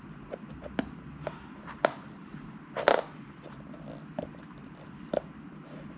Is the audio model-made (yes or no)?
no